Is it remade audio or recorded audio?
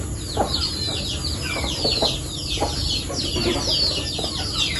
recorded